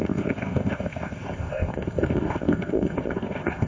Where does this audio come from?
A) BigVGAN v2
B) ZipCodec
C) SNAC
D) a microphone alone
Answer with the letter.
B